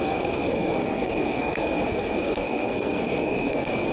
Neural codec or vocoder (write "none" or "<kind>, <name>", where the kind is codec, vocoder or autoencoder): codec, SNAC